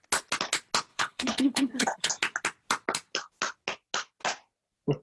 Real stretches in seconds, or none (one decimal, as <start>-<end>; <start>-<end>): 0.0-0.9; 2.1-5.0